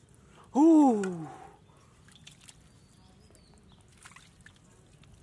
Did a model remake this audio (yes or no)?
no